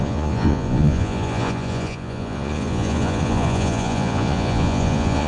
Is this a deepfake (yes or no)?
yes